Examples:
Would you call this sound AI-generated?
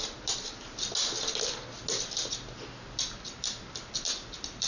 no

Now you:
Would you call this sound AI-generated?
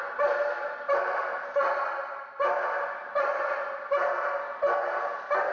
no